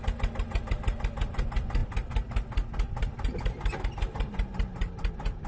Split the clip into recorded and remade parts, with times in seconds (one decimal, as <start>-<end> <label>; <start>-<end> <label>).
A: 0.0-5.5 recorded